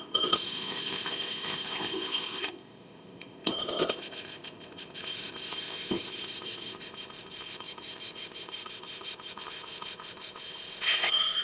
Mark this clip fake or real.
fake